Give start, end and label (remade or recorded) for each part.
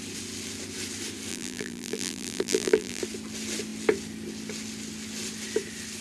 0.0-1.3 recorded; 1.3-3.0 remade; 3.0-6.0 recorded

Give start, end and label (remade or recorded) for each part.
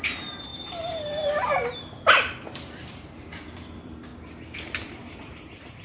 0.0-4.1 remade; 4.1-5.2 recorded; 5.2-5.8 remade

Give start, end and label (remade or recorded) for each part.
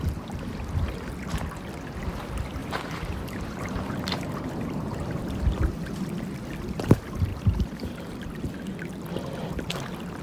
0.0-2.6 recorded; 2.6-5.4 remade; 5.4-7.3 recorded; 7.3-8.3 remade; 8.3-10.2 recorded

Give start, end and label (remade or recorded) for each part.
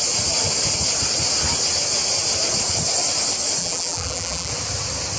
0.0-3.6 recorded; 3.6-4.5 remade; 4.5-5.2 recorded